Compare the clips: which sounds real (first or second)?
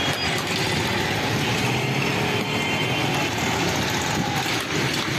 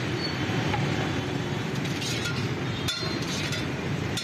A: first